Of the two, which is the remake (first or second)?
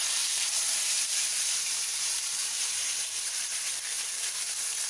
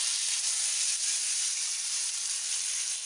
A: first